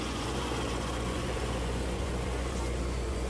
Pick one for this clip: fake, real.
fake